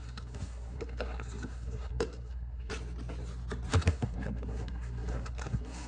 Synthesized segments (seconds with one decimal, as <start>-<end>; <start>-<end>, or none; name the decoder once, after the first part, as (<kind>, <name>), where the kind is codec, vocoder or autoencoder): 0.0-2.7 (codec, SNAC); 3.7-5.9